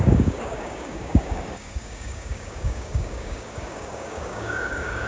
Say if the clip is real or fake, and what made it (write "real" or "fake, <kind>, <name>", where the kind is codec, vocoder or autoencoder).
fake, codec, DAC